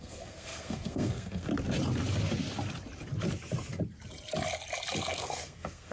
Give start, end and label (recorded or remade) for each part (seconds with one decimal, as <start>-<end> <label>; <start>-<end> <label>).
0.0-1.5 remade; 1.5-5.0 recorded; 5.0-5.9 remade